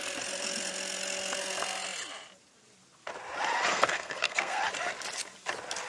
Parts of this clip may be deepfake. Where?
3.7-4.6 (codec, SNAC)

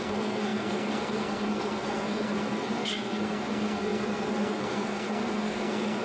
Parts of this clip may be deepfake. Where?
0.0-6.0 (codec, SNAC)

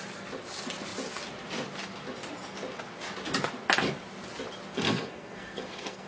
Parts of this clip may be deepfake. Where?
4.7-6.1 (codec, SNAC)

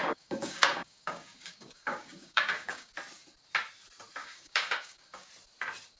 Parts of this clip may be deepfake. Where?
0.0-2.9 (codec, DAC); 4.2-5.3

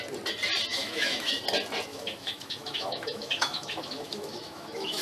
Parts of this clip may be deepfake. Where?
0.7-1.4 (autoencoder, DAC-VAE); 1.9-5.0

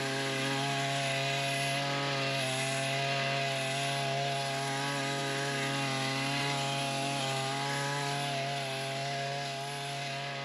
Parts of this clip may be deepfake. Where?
none

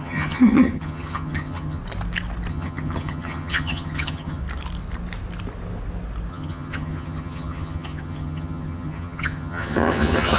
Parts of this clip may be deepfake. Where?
0.0-1.8 (vocoder, HiFi-GAN); 2.5-4.4; 6.3-10.4